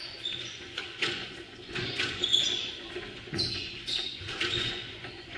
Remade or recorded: remade